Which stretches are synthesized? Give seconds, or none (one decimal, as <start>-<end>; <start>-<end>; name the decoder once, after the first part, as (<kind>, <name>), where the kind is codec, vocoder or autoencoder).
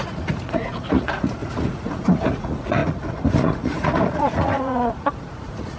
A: 0.0-5.8 (vocoder, Vocos)